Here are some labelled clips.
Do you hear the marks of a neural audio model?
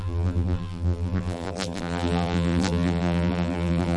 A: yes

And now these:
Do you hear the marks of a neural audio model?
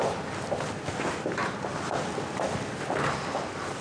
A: no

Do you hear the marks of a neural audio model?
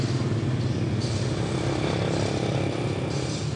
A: no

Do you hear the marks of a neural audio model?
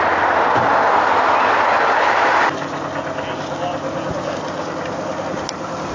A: no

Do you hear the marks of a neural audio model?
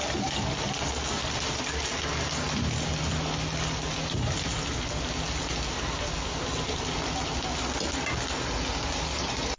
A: no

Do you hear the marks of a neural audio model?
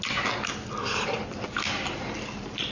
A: no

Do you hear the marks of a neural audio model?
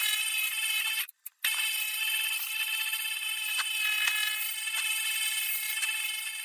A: no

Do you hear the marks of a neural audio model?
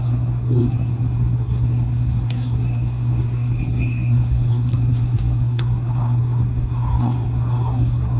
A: yes